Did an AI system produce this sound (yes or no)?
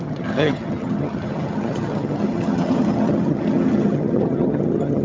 yes